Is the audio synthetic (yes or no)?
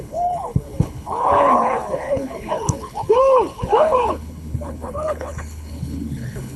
yes